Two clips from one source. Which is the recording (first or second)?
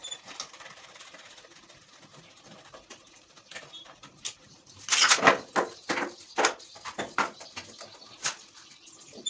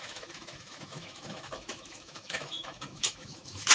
first